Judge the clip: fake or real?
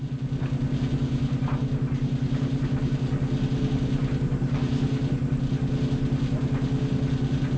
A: real